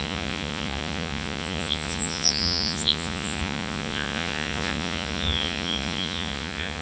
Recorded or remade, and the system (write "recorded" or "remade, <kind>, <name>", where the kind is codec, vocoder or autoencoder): remade, vocoder, Vocos